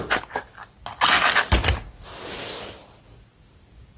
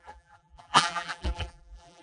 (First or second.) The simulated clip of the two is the second